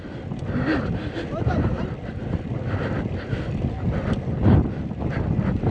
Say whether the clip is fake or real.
real